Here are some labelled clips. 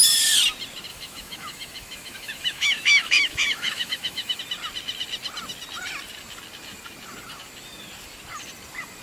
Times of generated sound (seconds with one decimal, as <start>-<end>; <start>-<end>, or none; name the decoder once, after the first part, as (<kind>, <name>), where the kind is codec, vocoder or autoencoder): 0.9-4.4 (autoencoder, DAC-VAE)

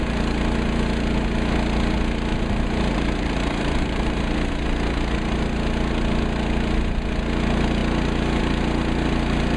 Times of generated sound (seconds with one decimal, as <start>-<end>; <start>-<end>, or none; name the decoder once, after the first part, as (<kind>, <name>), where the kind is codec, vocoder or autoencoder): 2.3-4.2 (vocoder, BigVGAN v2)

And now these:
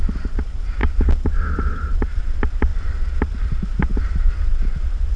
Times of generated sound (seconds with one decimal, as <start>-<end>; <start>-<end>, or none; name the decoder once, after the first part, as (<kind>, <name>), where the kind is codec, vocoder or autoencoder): none

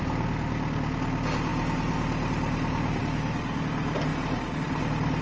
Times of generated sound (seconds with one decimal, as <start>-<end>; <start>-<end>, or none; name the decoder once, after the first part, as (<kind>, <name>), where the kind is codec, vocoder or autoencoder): none